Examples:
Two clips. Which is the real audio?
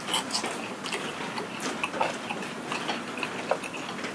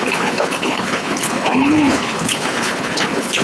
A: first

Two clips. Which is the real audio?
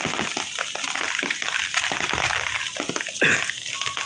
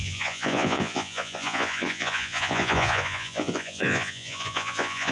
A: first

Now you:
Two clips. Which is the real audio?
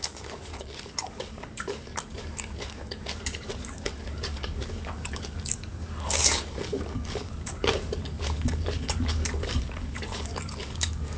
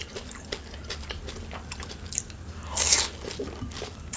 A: second